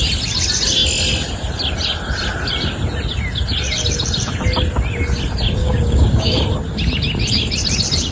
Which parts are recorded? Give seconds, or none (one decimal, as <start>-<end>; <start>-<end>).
0.0-5.6; 6.4-8.1